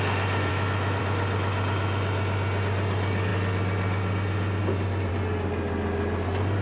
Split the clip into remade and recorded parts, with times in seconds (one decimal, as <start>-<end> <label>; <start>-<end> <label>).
0.0-0.5 recorded; 0.5-1.0 remade; 1.0-6.6 recorded